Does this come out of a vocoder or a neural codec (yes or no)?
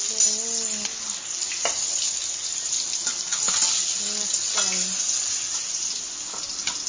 no